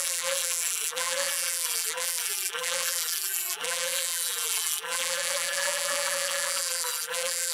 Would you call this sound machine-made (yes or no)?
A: yes